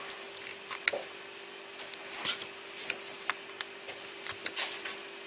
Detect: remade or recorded recorded